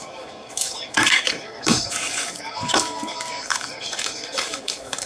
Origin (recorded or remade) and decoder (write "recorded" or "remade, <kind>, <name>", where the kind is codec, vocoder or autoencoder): remade, codec, DAC